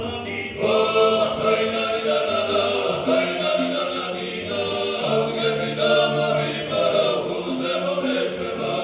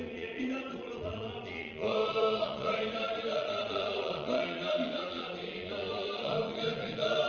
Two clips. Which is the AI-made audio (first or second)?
second